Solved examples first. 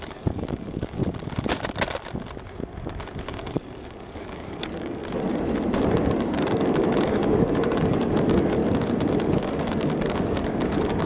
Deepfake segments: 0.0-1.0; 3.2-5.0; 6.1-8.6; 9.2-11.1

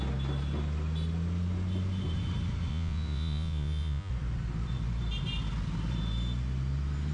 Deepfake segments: 2.7-4.1